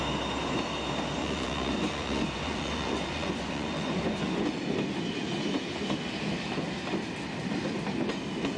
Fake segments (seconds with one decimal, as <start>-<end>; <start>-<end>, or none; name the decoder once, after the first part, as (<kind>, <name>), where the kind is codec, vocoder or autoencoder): 1.2-4.5 (vocoder, Vocos)